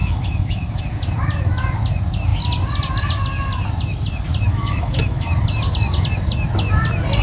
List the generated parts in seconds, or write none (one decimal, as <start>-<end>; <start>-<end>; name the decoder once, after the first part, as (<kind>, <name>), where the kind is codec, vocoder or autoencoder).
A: 0.0-0.8 (autoencoder, DAC-VAE); 4.5-5.3